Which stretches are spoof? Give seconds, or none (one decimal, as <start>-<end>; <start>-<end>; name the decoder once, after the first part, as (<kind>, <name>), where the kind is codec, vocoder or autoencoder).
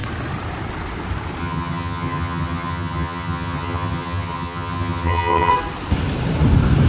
1.4-5.5 (vocoder, HiFi-GAN)